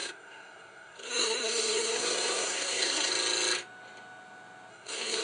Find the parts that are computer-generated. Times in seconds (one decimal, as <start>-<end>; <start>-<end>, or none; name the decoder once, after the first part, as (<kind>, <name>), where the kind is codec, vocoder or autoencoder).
0.0-3.1 (codec, SNAC); 4.7-5.2